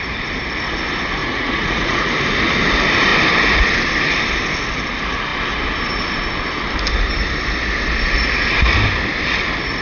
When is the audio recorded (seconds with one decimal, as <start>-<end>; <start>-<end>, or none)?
0.0-1.2; 2.1-9.8